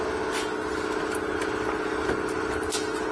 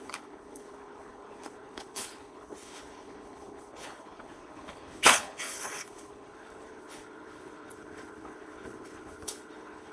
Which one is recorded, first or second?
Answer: first